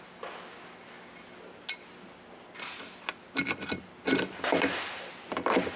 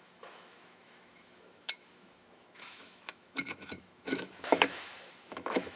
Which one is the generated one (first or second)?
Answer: second